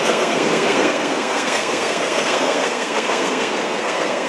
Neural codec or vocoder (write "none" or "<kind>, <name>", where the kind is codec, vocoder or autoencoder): codec, SNAC